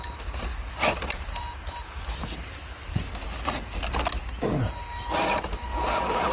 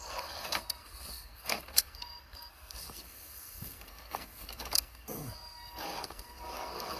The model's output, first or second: second